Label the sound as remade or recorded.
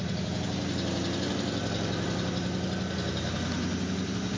recorded